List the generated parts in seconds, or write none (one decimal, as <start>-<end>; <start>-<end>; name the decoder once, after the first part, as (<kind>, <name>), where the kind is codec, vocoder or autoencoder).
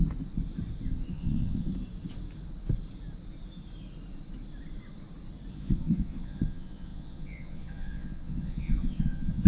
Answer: 1.1-1.7 (vocoder, Vocos); 5.5-9.5